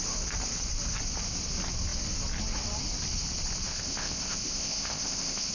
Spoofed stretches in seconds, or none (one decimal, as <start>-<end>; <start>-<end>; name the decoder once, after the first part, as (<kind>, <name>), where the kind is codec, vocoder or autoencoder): 3.7-5.5 (codec, ZipCodec)